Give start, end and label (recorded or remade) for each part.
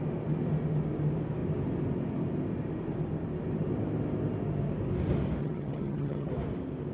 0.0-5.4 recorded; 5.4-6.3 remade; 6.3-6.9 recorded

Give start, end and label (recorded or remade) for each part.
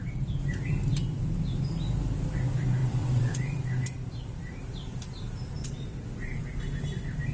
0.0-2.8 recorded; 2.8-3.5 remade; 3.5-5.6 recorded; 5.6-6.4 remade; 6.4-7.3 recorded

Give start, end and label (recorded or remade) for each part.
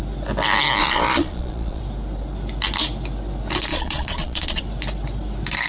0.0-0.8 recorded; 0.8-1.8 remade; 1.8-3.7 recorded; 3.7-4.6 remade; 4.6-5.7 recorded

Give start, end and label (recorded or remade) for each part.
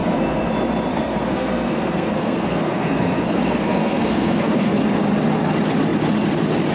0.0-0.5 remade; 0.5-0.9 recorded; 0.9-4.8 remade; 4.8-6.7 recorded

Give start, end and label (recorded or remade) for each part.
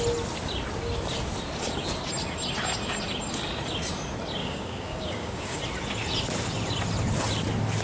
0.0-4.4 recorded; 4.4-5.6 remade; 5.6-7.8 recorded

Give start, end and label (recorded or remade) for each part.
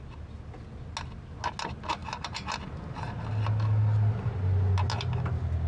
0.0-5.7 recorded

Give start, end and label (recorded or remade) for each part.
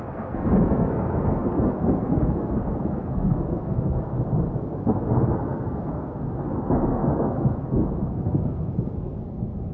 0.0-4.1 remade; 4.1-5.3 recorded; 5.3-9.7 remade